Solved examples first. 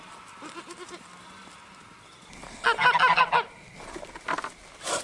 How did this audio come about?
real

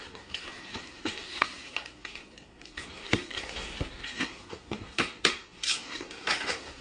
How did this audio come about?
fake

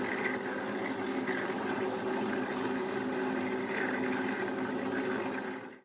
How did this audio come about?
real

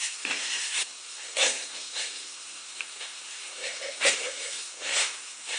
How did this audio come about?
fake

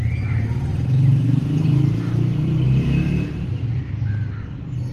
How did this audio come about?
real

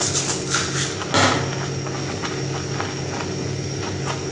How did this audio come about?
real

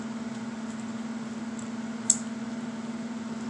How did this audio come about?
real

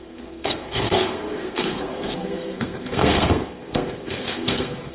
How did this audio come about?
fake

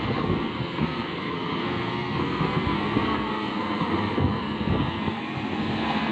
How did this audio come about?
fake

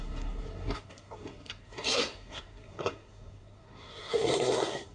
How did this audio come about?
fake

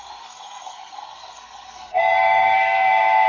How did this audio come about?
fake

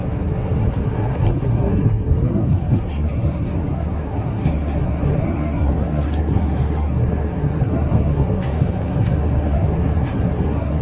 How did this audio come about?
fake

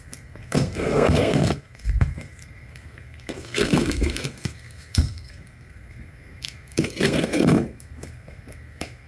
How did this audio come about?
fake